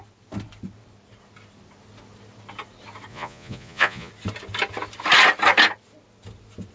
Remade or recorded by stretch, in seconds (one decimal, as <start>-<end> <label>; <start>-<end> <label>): 0.0-3.1 recorded; 3.1-4.1 remade; 4.1-6.7 recorded